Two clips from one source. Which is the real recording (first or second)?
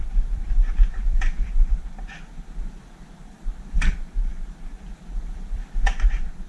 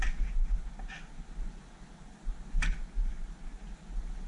second